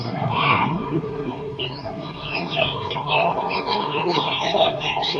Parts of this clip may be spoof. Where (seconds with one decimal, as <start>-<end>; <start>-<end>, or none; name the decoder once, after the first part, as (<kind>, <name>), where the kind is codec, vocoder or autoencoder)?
0.0-5.2 (codec, SNAC)